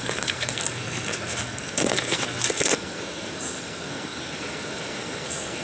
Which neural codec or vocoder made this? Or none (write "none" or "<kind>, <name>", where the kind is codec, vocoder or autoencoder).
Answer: codec, SNAC